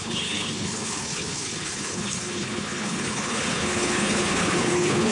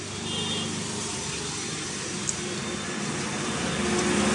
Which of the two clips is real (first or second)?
second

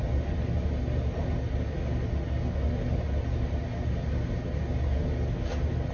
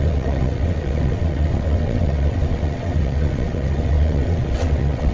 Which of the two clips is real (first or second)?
first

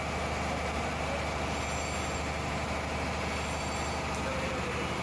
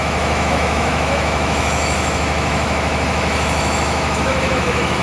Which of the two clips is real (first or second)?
first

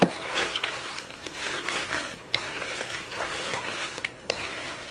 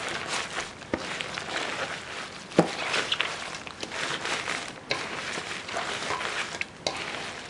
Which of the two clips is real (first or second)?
second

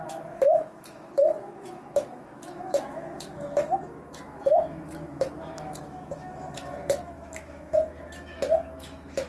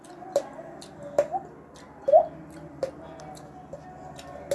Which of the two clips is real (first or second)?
second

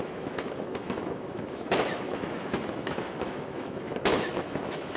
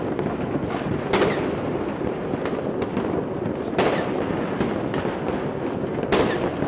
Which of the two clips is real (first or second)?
second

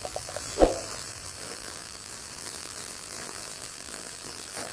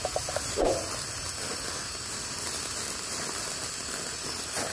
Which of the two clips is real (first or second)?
second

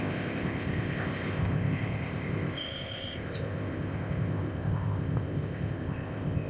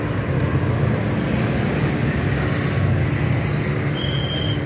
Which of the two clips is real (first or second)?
second